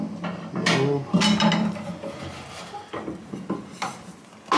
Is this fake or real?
real